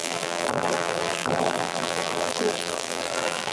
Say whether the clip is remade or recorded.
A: remade